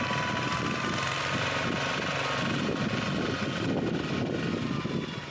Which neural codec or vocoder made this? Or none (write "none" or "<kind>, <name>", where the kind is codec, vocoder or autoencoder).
none